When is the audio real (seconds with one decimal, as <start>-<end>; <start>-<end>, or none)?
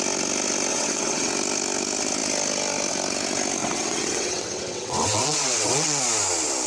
0.0-0.7; 1.3-3.6; 6.0-6.7